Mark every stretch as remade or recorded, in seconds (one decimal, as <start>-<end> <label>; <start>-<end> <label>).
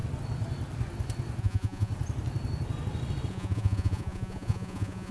0.0-1.4 recorded; 1.4-1.9 remade; 1.9-3.3 recorded; 3.3-5.1 remade